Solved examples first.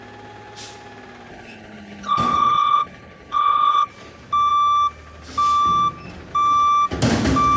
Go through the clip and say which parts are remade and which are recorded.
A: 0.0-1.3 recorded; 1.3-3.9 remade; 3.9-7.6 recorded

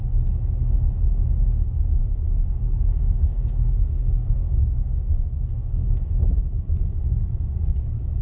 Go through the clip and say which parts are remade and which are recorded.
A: 0.0-2.0 recorded; 2.0-6.2 remade; 6.2-8.2 recorded

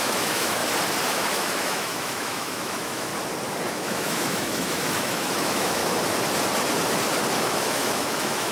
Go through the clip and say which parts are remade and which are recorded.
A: 0.0-0.6 remade; 0.6-1.1 recorded; 1.1-3.1 remade; 3.1-3.7 recorded; 3.7-5.8 remade; 5.8-7.4 recorded; 7.4-8.5 remade

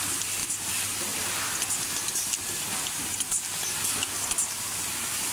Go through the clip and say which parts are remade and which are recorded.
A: 0.0-5.3 recorded

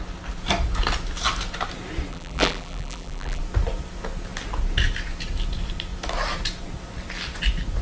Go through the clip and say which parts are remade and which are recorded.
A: 0.0-2.1 recorded; 2.1-3.4 remade; 3.4-7.8 recorded

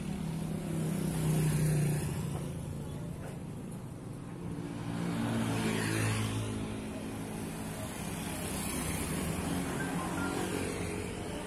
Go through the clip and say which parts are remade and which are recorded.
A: 0.0-10.5 recorded; 10.5-11.5 remade